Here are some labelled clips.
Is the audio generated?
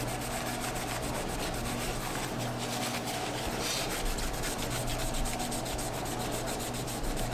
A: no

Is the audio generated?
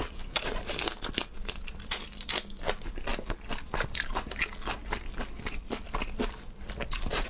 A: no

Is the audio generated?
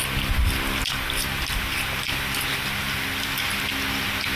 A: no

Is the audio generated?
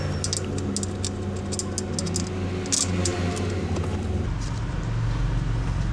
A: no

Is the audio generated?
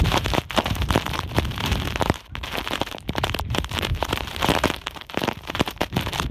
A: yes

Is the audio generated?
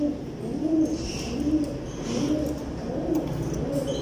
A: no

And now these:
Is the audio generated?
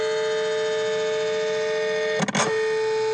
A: no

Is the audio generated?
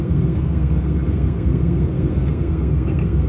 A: yes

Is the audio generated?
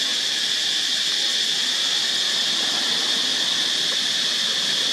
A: no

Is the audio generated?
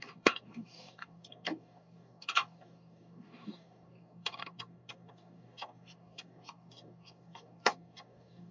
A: yes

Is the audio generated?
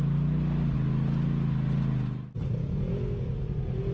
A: no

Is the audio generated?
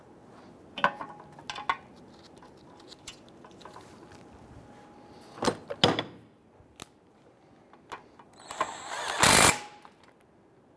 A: no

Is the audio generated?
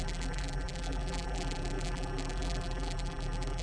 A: yes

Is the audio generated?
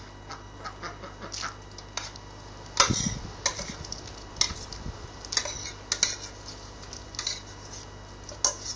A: no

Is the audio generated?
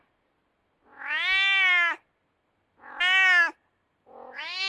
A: no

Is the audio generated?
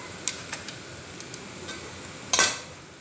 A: no